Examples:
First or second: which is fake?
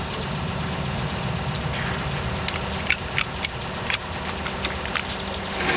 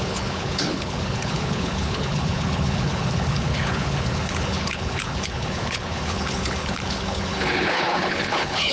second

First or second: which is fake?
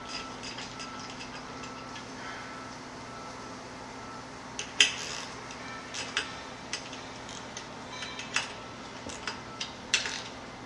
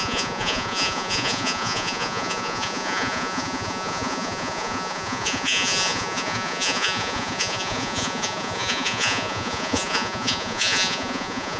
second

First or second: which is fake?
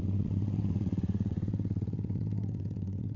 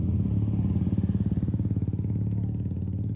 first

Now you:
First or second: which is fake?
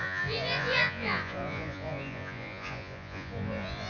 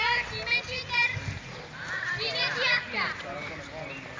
first